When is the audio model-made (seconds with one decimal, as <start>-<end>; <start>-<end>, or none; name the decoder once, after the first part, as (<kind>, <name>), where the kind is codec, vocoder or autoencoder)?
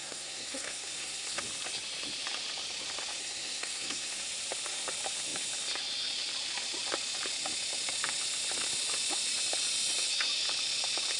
0.0-1.4 (codec, SNAC); 3.2-4.2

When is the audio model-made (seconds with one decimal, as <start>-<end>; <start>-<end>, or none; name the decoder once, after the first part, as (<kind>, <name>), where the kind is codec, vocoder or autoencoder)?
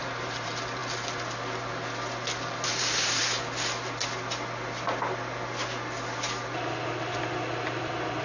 0.0-0.8 (vocoder, BigVGAN v2); 2.7-3.2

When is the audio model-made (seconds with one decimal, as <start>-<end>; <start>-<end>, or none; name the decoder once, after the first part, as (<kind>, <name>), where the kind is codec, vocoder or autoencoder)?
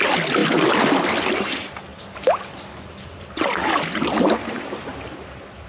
none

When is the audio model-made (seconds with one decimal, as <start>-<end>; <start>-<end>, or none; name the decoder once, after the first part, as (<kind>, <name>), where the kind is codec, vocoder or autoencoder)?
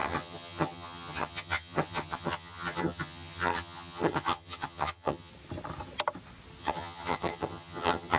0.0-5.3 (vocoder, HiFi-GAN); 6.6-8.2